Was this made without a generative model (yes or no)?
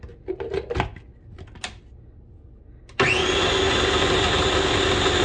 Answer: yes